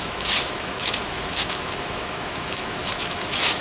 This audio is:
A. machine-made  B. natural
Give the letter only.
A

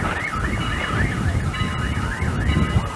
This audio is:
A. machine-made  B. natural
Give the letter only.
B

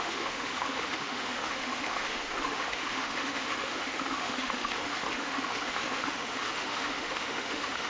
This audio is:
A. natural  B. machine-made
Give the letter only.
B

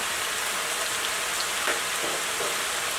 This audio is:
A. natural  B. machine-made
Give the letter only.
A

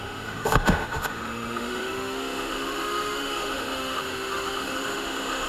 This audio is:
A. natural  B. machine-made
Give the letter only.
B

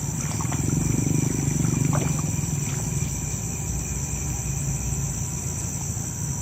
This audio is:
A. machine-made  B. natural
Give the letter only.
B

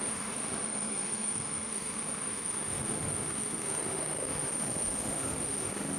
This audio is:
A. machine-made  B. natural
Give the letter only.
A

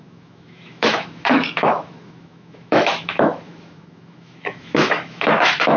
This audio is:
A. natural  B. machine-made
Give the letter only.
B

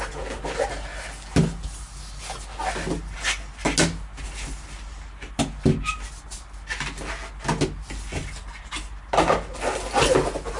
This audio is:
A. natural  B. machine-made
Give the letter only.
A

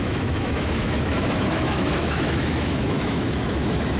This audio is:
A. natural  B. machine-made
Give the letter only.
B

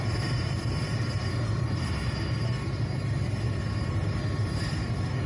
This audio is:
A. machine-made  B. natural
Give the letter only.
B